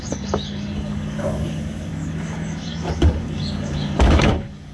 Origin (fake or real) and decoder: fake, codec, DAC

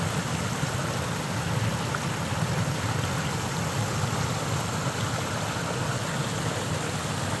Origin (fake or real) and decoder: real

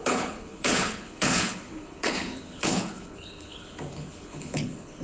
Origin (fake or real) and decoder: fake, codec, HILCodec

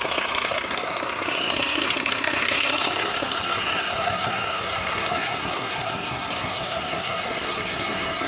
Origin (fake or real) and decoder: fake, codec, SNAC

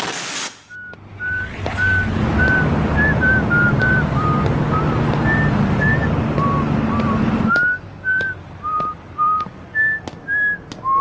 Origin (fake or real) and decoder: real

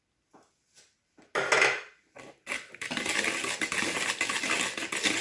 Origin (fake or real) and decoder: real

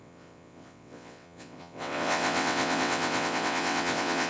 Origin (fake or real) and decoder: fake, vocoder, WaveNeXt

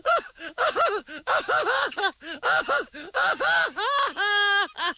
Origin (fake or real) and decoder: fake, codec, DAC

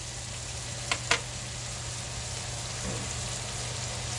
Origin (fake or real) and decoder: real